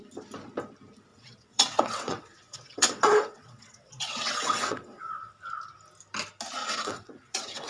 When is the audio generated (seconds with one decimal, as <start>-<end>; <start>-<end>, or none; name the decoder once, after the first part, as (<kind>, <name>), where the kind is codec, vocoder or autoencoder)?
1.1-5.3 (vocoder, WaveNeXt); 6.6-7.7